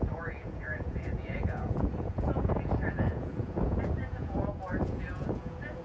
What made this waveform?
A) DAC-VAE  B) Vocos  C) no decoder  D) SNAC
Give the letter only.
B